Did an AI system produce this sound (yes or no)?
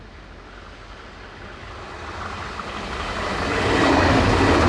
no